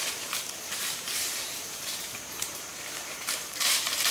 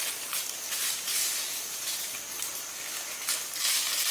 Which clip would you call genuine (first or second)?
second